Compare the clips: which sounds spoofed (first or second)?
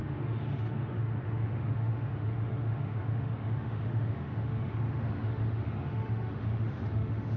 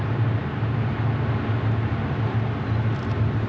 first